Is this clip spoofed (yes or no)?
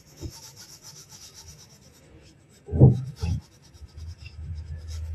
yes